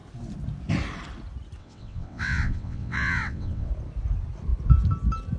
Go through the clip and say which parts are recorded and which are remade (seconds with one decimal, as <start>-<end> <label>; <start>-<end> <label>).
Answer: 0.0-1.6 recorded; 1.6-3.7 remade; 3.7-5.4 recorded